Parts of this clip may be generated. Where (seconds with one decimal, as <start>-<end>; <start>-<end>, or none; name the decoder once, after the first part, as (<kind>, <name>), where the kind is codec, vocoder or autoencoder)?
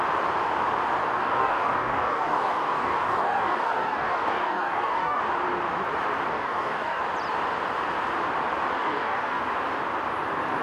1.2-5.2 (codec, DAC); 6.3-7.0; 8.8-9.4